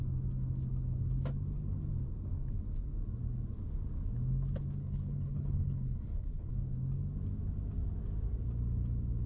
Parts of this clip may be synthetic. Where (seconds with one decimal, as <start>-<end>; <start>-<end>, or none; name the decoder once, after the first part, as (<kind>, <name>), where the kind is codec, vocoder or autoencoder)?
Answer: 4.8-6.5 (codec, HILCodec)